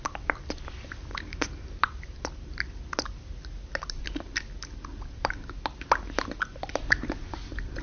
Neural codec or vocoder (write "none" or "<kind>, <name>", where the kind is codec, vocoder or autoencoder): none